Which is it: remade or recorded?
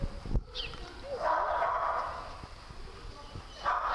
recorded